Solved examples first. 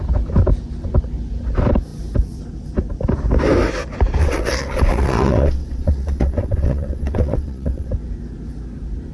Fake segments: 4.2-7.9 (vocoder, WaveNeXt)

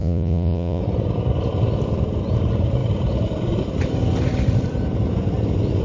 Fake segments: 0.0-0.8 (vocoder, Vocos)

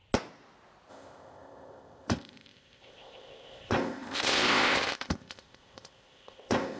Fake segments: 0.9-6.8 (codec, ZipCodec)

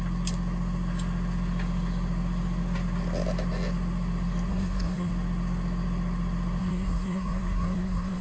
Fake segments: 4.5-5.1 (codec, SNAC); 6.6-8.2